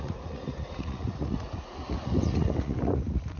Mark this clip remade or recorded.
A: remade